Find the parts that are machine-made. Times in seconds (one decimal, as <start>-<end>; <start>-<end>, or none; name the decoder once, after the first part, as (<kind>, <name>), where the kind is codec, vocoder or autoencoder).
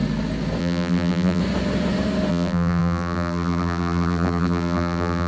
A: 0.6-1.4 (vocoder, BigVGAN v2); 2.3-5.3